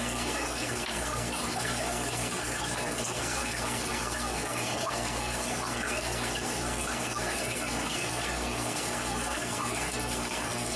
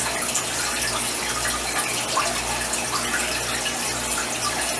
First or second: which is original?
second